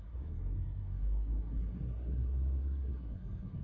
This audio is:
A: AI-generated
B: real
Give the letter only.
A